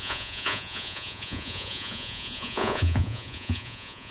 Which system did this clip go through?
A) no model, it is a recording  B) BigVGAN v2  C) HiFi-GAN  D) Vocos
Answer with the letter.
D